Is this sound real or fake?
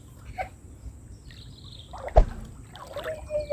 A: real